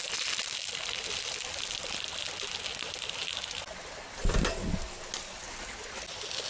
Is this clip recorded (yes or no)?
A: yes